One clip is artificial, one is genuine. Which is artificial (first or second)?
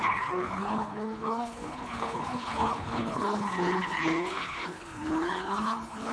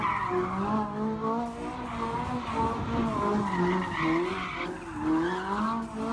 first